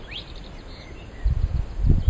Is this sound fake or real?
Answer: real